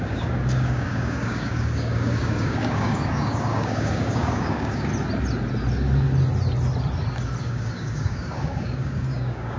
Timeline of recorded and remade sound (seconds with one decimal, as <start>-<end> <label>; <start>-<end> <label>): 0.0-4.9 remade; 4.9-7.4 recorded; 7.4-9.6 remade